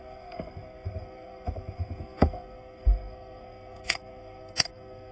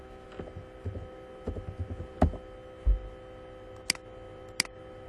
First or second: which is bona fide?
second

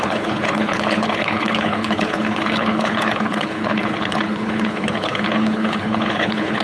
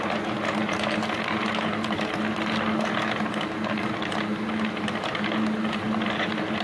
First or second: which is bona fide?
second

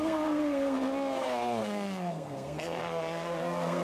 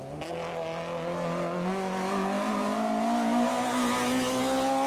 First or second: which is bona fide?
second